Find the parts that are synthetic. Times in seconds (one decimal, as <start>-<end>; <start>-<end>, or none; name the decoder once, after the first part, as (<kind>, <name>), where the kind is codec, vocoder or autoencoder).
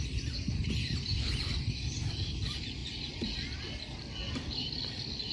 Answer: none